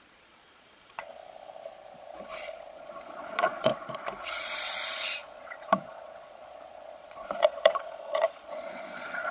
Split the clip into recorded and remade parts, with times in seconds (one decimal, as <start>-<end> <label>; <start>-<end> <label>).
0.0-1.2 remade; 1.2-2.0 recorded; 2.0-3.7 remade; 3.7-4.2 recorded; 4.2-9.3 remade